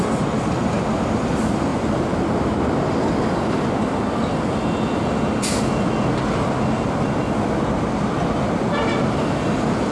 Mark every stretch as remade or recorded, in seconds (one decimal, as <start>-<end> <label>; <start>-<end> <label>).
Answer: 0.0-1.7 recorded; 1.7-4.2 remade; 4.2-9.9 recorded